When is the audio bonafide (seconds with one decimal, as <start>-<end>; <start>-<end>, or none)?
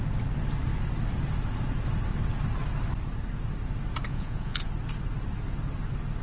0.0-4.1; 4.7-6.2